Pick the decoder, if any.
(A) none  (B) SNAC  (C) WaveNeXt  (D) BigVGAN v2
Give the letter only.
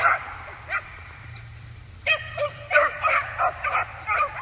D